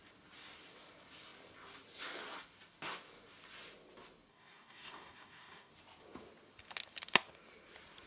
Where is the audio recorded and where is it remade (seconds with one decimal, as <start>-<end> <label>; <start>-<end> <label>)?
0.0-4.3 recorded; 4.3-5.7 remade; 5.7-8.1 recorded